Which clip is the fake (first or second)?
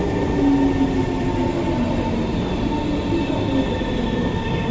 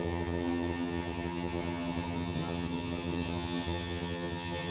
second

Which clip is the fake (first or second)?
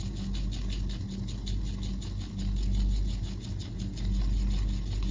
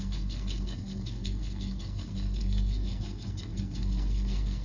second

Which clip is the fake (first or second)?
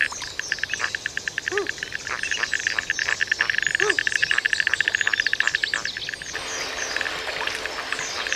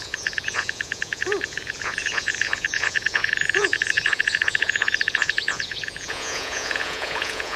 second